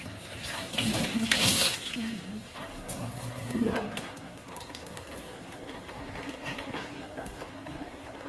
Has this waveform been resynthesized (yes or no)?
yes